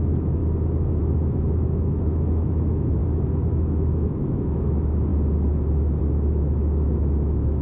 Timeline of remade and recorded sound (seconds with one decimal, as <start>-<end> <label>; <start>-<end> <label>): 0.0-0.4 remade; 0.4-1.0 recorded; 1.0-3.0 remade; 3.0-3.5 recorded; 3.5-5.1 remade; 5.1-6.0 recorded; 6.0-7.6 remade